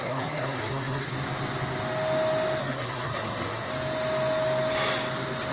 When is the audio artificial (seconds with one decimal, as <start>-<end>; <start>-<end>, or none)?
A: 0.0-1.1; 2.6-3.7